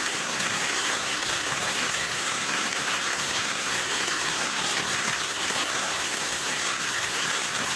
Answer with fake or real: fake